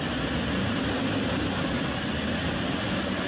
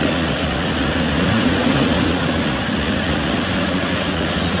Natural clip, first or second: first